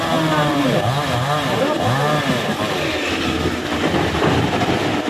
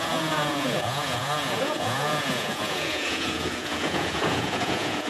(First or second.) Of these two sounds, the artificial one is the second